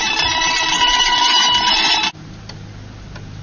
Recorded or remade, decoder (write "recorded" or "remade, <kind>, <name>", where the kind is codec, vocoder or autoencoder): recorded